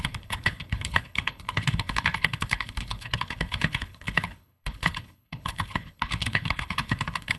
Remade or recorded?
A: remade